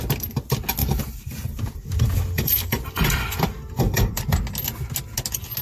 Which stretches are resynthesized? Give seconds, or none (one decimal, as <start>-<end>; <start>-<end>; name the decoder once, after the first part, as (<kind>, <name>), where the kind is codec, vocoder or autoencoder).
0.8-4.2 (vocoder, BigVGAN v2)